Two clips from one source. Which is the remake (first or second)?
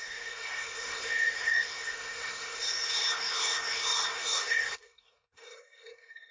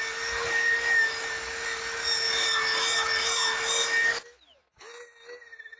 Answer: first